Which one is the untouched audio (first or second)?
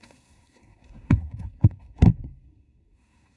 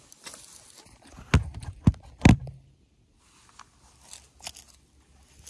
second